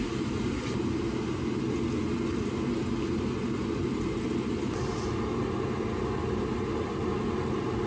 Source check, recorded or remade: recorded